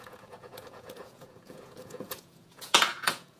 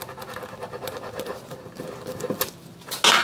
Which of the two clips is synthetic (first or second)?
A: first